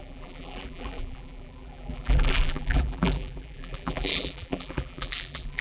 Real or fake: fake